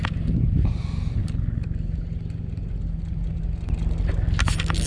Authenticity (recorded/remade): recorded